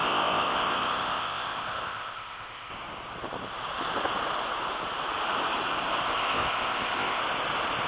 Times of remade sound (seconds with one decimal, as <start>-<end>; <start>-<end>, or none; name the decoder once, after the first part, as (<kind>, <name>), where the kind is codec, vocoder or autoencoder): 0.0-2.7 (codec, ZipCodec); 6.1-7.2